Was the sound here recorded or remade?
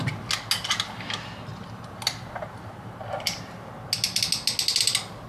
recorded